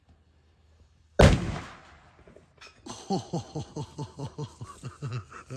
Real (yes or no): yes